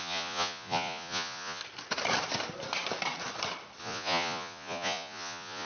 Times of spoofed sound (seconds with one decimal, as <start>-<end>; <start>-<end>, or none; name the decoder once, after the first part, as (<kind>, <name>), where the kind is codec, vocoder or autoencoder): 0.0-1.6 (vocoder, Vocos); 3.8-5.7